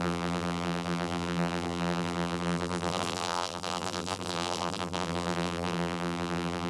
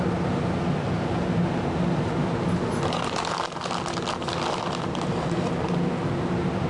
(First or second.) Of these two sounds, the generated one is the first